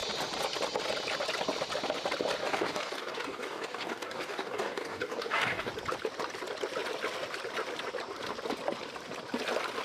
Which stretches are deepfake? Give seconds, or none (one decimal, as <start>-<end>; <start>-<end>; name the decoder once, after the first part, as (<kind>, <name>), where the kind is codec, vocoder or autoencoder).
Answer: 2.4-5.7 (codec, DAC)